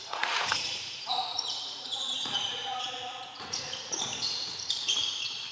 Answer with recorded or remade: remade